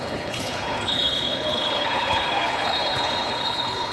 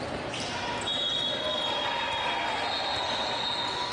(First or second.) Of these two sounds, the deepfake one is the first